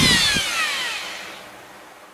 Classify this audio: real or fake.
real